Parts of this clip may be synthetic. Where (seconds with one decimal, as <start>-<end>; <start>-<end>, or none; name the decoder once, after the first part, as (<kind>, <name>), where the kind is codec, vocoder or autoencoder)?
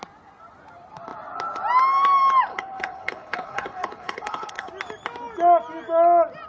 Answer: 2.5-4.7 (codec, HILCodec)